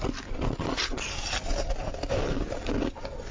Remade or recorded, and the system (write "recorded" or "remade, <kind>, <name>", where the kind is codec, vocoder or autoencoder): recorded